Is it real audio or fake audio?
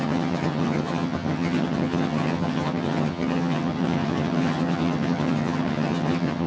fake